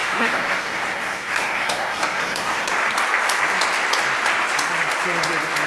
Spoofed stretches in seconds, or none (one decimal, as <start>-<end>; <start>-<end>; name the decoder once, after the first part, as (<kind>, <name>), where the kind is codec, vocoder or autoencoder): 0.0-2.7 (codec, SNAC)